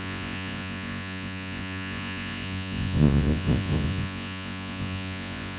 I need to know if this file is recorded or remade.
remade